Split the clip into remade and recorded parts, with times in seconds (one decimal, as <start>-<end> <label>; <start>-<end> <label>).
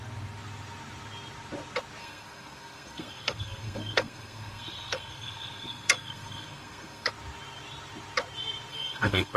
0.0-2.0 recorded; 2.0-7.1 remade; 7.1-8.7 recorded; 8.7-9.4 remade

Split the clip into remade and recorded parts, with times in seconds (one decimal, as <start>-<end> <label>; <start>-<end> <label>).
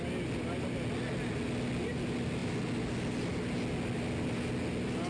0.0-5.1 recorded